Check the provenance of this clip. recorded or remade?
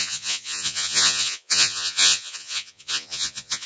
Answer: remade